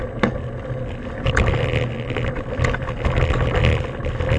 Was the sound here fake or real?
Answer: real